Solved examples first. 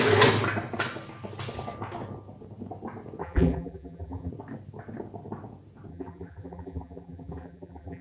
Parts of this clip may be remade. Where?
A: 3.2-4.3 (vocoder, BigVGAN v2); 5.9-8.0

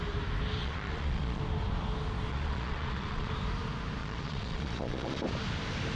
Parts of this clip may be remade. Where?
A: 0.6-1.4 (vocoder, Vocos); 2.3-3.3; 4.0-5.2

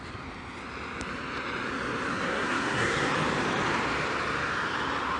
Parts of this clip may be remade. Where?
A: 2.1-3.1 (codec, SNAC)